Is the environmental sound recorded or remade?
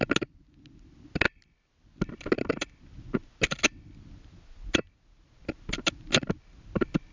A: recorded